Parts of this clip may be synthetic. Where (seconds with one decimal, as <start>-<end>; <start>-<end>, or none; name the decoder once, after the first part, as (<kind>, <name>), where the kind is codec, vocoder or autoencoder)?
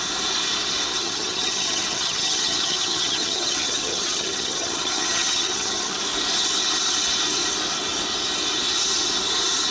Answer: 0.9-6.0 (vocoder, HiFi-GAN)